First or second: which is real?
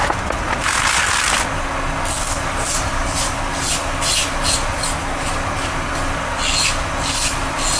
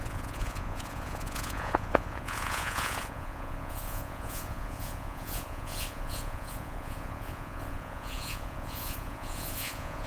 first